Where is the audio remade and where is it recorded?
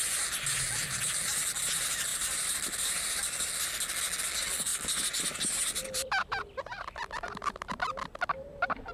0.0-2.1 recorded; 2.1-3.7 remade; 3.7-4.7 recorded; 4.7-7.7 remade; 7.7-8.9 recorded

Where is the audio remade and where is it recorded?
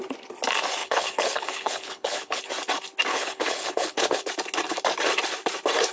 0.0-0.8 recorded; 0.8-2.4 remade; 2.4-3.1 recorded; 3.1-4.3 remade; 4.3-5.9 recorded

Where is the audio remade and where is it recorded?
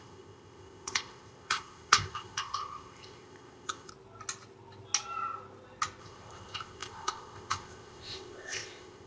0.0-3.9 remade; 3.9-6.0 recorded; 6.0-9.1 remade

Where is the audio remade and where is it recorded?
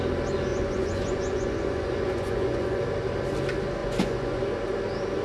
0.0-0.5 recorded; 0.5-2.8 remade; 2.8-3.8 recorded; 3.8-4.4 remade; 4.4-5.2 recorded